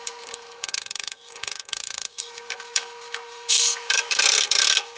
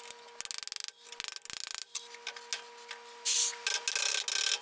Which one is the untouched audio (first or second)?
second